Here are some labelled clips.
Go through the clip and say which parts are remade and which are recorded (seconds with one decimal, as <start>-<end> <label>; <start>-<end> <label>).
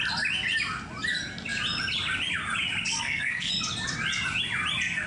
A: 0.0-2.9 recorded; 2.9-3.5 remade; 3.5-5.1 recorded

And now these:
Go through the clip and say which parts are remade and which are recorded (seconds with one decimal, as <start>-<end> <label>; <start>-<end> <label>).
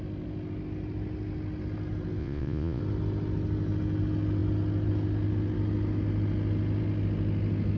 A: 0.0-2.2 recorded; 2.2-2.8 remade; 2.8-7.8 recorded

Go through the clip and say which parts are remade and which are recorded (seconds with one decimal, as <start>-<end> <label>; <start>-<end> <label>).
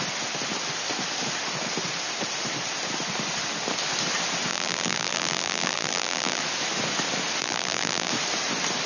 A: 0.0-4.5 recorded; 4.5-6.4 remade; 6.4-7.4 recorded; 7.4-8.1 remade; 8.1-8.9 recorded